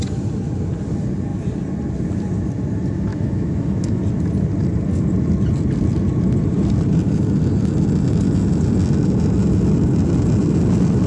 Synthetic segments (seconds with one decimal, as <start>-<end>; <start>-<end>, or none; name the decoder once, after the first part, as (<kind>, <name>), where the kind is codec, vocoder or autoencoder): 3.1-4.0 (autoencoder, DAC-VAE)